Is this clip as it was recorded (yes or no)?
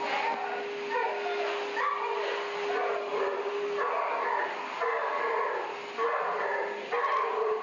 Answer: yes